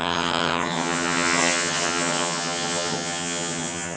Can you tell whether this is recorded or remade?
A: remade